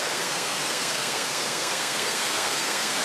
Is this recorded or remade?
remade